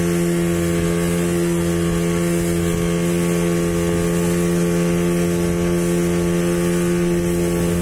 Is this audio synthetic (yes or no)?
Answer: no